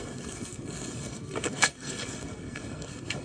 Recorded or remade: remade